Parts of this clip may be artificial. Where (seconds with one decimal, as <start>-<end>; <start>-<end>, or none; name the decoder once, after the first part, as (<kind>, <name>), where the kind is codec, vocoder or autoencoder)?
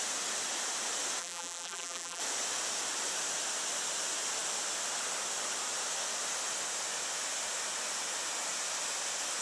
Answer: 1.2-2.2 (vocoder, BigVGAN v2)